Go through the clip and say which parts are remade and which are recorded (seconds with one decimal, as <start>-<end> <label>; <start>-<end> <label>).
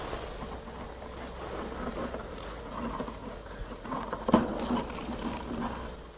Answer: 0.0-2.2 recorded; 2.2-4.3 remade; 4.3-6.2 recorded